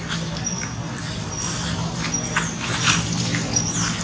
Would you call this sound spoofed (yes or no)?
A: no